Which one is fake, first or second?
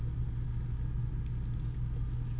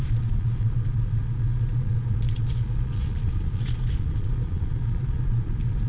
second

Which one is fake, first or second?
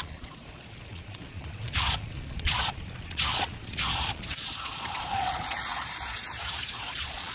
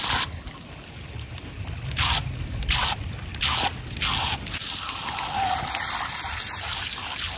first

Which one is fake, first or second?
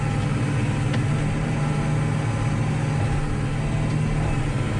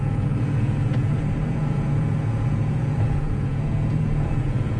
second